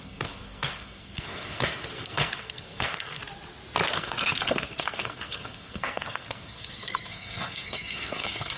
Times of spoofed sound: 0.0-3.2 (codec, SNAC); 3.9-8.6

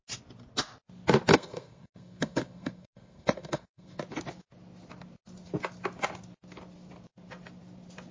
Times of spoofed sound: 1.3-4.0 (codec, SNAC)

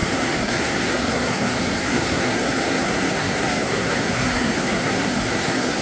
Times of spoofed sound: 0.0-5.8 (codec, SNAC)

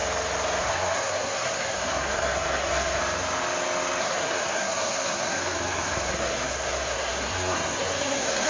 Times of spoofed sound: 0.6-3.0 (codec, SNAC); 4.0-8.5

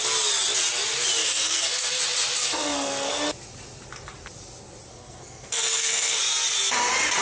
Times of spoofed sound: 1.2-2.0 (codec, SNAC); 2.4-3.1; 4.9-6.2

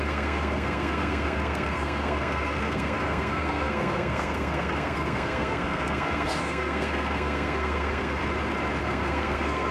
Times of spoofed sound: 0.0-8.2 (codec, SNAC); 8.8-9.7

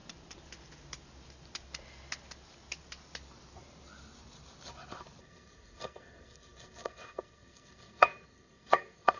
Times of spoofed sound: 5.2-9.2 (codec, SNAC)